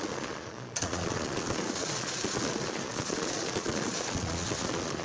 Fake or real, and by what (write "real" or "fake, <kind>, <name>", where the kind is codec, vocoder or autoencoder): fake, vocoder, Vocos